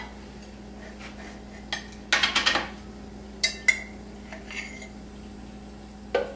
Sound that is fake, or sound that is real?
real